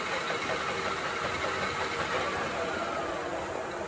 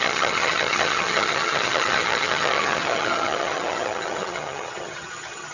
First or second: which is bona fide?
first